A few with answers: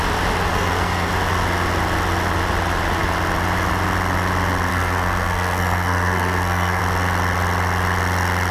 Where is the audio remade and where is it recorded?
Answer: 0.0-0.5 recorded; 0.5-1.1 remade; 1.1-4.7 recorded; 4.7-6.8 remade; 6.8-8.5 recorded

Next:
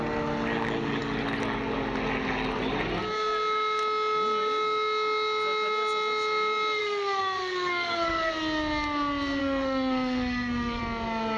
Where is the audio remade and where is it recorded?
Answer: 0.0-6.8 recorded; 6.8-8.3 remade; 8.3-9.4 recorded; 9.4-10.8 remade; 10.8-11.4 recorded

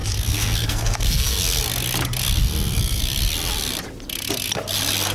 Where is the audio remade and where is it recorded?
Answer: 0.0-1.6 remade; 1.6-2.4 recorded; 2.4-3.0 remade; 3.0-5.1 recorded

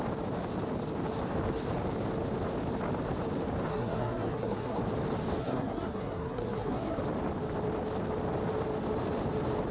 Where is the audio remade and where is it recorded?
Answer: 0.0-3.7 recorded; 3.7-4.8 remade; 4.8-5.4 recorded; 5.4-7.0 remade; 7.0-9.7 recorded